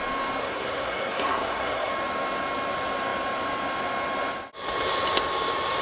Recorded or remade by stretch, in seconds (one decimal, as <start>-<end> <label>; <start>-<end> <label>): 0.0-0.4 recorded; 0.4-1.9 remade; 1.9-5.8 recorded